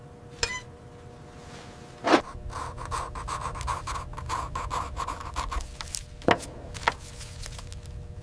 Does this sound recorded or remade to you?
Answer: recorded